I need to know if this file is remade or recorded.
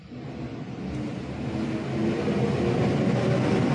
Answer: recorded